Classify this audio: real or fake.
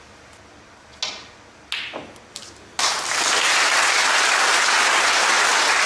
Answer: real